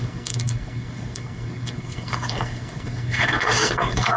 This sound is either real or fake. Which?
fake